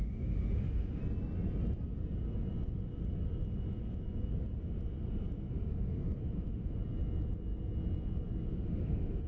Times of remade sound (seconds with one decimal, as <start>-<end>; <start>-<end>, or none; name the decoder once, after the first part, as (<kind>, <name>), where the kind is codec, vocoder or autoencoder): 0.0-1.0 (autoencoder, DAC-VAE); 5.5-6.8; 8.5-9.3